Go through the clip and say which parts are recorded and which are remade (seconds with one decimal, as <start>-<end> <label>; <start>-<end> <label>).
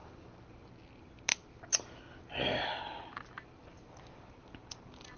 0.0-5.2 recorded